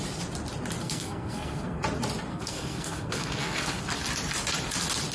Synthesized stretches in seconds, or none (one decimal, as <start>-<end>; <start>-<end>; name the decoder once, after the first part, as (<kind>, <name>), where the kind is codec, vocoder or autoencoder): 0.8-1.8 (codec, SNAC); 2.3-3.8